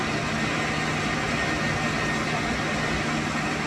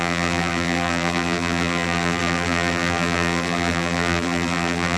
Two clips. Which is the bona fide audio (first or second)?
first